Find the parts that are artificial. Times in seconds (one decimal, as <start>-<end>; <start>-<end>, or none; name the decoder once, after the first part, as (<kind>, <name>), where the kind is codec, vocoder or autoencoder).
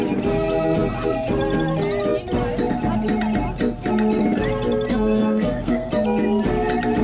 4.9-5.9 (codec, SNAC)